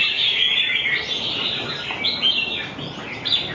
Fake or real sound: real